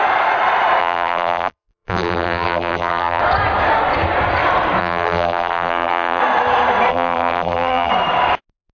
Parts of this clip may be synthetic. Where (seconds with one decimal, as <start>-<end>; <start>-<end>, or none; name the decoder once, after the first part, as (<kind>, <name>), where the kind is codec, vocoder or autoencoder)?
0.8-3.2 (vocoder, BigVGAN v2); 4.8-6.2; 6.9-7.9